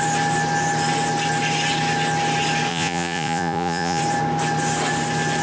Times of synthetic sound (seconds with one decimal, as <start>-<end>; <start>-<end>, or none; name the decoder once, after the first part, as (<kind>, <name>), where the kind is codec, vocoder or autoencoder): 2.7-4.0 (vocoder, Vocos)